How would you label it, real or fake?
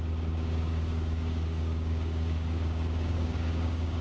fake